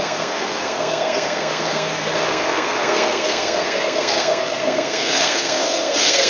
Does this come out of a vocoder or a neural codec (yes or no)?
yes